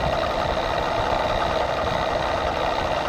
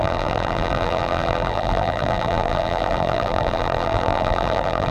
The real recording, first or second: first